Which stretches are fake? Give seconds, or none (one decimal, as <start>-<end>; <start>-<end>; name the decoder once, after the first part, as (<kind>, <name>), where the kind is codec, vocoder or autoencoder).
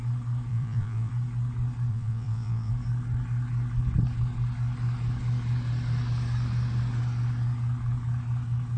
0.5-1.1 (vocoder, Vocos); 1.9-2.7